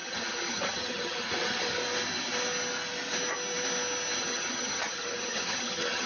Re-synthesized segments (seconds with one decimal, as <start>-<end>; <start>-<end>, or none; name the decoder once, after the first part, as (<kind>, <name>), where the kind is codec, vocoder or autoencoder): 0.0-1.8 (vocoder, HiFi-GAN); 4.2-6.1